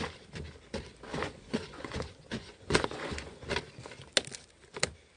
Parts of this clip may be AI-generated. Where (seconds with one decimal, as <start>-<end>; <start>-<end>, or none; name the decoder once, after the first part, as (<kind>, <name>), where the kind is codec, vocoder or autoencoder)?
1.1-3.6 (vocoder, Vocos)